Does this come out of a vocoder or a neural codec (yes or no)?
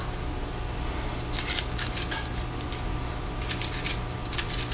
no